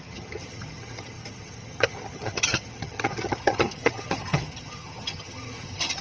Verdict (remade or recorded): remade